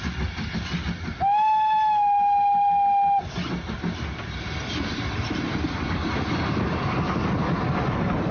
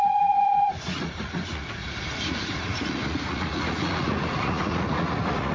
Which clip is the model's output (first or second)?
second